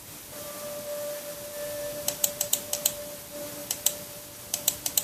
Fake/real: fake